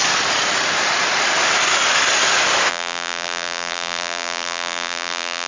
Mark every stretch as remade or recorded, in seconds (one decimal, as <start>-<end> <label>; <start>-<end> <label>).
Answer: 0.0-2.7 recorded; 2.7-5.5 remade